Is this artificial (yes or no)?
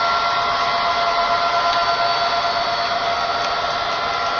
no